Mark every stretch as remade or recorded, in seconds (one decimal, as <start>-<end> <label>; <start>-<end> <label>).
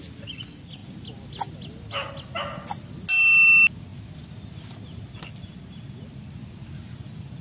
0.0-7.4 recorded